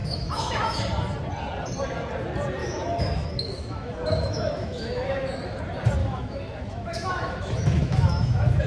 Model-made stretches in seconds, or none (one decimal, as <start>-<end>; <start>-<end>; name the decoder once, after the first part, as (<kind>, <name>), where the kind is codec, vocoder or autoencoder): 0.0-0.8 (autoencoder, DAC-VAE); 2.6-5.6; 6.0-8.7